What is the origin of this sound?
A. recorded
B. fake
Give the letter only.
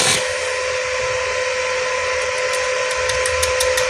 A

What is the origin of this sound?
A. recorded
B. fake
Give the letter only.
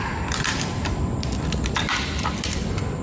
B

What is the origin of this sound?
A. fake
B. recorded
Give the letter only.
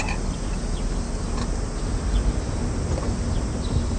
B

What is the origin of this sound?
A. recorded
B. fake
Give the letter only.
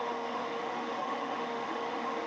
B